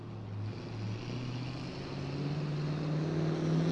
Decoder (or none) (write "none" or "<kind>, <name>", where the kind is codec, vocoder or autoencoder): none